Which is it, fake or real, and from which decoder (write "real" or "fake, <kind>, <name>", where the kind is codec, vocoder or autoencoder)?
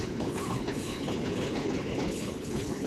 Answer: fake, codec, HILCodec